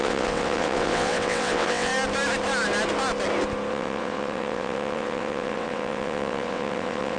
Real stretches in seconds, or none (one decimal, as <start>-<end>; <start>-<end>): 1.9-3.7